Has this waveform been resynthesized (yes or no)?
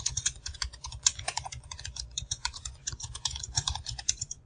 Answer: yes